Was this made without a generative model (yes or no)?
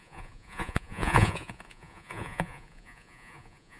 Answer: no